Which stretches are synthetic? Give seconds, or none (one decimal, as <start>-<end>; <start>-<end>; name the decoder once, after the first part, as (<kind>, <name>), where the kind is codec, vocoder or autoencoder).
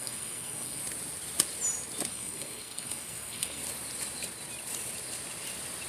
0.0-0.8 (codec, SNAC); 2.1-3.6